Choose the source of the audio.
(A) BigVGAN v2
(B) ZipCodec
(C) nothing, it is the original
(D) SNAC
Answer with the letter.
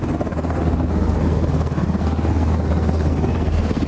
D